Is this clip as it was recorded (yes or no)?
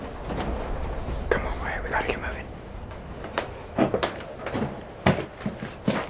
yes